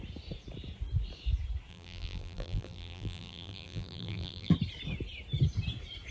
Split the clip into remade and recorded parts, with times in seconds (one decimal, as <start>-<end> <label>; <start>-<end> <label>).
0.0-1.7 recorded; 1.7-4.5 remade; 4.5-6.1 recorded